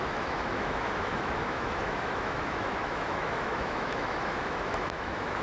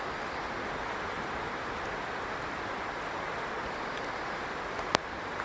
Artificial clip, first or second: first